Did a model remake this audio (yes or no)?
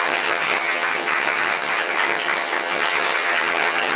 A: yes